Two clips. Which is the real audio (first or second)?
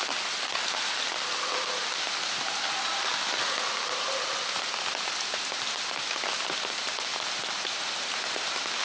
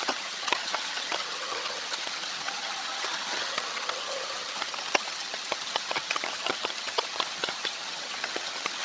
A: first